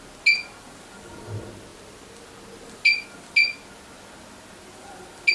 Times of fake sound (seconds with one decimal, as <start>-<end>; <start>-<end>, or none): none

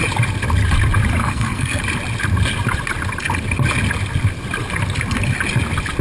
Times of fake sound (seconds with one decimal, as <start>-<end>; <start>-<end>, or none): 1.2-1.8

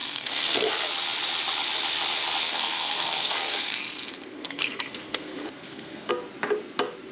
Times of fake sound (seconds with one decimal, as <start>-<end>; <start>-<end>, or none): 0.0-0.7; 2.4-6.1

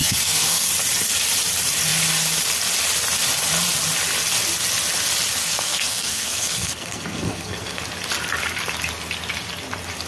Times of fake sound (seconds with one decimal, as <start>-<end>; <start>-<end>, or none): 0.0-0.7; 5.4-7.8

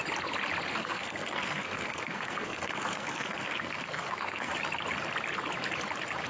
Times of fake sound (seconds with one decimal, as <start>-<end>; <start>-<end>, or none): 0.7-4.5

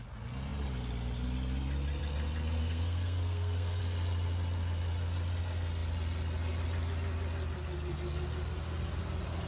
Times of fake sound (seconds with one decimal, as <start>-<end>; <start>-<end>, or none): 2.6-3.8

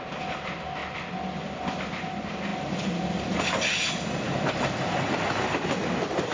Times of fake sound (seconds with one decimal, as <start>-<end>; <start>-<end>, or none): none